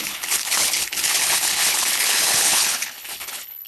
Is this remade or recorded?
remade